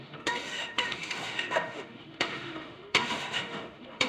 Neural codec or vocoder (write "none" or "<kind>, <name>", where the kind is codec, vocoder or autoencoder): autoencoder, DAC-VAE